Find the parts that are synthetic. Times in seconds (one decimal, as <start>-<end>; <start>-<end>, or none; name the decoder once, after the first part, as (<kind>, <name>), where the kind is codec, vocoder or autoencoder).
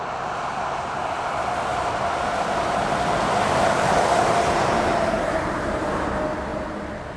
1.7-6.0 (vocoder, BigVGAN v2); 6.5-7.2